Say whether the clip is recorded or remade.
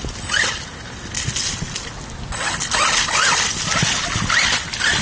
recorded